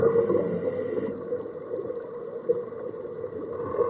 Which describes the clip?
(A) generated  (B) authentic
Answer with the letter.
B